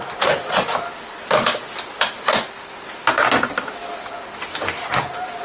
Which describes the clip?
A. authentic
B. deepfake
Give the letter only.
A